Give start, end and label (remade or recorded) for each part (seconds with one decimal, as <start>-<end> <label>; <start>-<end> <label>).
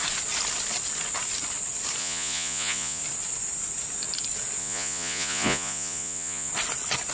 0.0-2.0 recorded; 2.0-3.0 remade; 3.0-4.6 recorded; 4.6-6.5 remade; 6.5-7.1 recorded